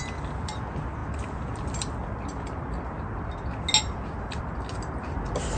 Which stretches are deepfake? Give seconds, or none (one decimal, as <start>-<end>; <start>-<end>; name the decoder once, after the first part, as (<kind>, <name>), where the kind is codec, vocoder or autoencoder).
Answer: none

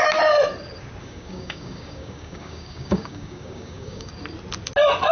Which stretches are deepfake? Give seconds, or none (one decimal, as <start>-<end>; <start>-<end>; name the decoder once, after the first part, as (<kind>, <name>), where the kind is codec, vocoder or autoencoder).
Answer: 1.0-4.1 (codec, DAC)

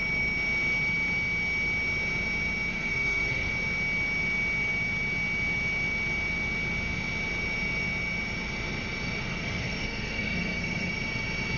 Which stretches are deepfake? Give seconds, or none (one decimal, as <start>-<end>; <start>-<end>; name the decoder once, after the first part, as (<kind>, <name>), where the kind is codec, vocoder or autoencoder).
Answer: 2.7-3.5 (codec, SNAC); 9.2-10.9

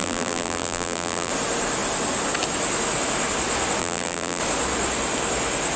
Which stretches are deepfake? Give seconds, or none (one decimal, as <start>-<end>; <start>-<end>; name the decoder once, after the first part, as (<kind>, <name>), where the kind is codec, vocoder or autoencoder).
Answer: 0.0-1.3 (vocoder, BigVGAN v2); 3.8-4.4